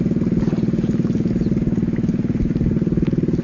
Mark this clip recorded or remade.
recorded